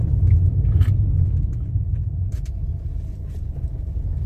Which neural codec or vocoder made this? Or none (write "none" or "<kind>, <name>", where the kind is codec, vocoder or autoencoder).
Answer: vocoder, BigVGAN v2